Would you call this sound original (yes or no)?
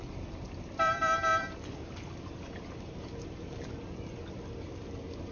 no